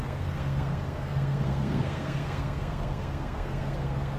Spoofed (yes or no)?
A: yes